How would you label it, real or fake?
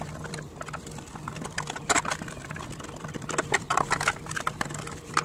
real